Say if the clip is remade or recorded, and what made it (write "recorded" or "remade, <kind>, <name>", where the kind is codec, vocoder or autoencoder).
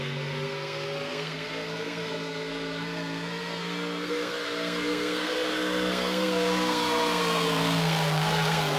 remade, codec, SNAC